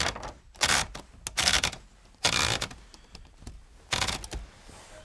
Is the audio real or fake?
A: real